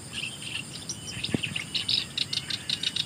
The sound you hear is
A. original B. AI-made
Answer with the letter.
A